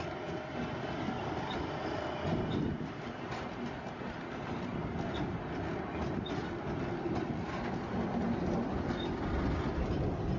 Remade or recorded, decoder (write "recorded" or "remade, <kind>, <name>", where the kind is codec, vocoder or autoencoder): recorded